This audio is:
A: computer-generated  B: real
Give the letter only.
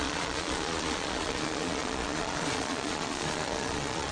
A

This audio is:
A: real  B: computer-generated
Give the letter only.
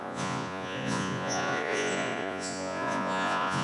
B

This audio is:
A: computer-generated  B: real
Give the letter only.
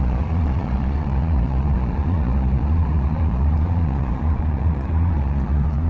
A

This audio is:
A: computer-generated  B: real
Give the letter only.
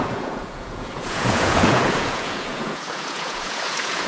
A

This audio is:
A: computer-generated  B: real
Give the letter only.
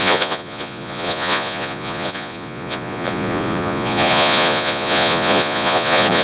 A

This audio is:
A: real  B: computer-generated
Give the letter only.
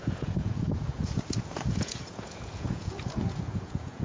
B